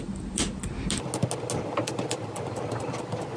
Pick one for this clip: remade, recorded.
recorded